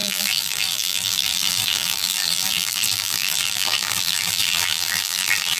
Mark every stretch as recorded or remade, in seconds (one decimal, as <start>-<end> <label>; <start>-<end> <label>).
0.0-5.6 remade